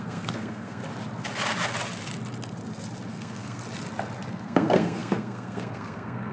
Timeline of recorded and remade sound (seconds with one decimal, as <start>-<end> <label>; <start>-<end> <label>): 0.0-0.8 remade; 0.8-3.1 recorded; 3.1-3.6 remade; 3.6-4.3 recorded; 4.3-6.3 remade